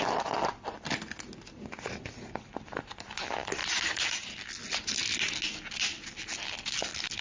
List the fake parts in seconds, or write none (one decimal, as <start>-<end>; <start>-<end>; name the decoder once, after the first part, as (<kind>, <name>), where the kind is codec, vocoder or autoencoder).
none